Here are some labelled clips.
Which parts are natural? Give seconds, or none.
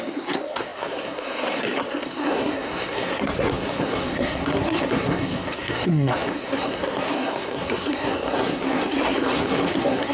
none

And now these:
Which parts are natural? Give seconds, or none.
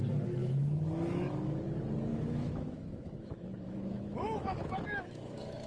0.0-0.4; 1.6-2.1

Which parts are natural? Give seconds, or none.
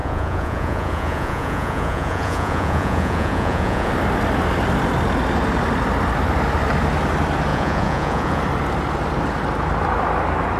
3.9-7.5; 8.4-10.6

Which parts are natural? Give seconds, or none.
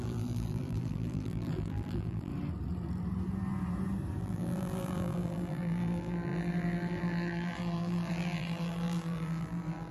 2.3-4.2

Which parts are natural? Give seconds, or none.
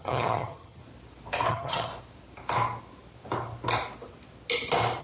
0.8-1.5; 1.9-5.0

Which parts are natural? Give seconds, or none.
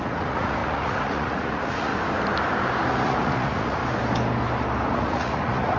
1.9-2.9; 3.8-4.9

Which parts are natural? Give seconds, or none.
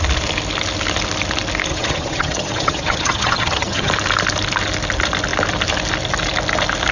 0.0-1.7; 3.9-6.9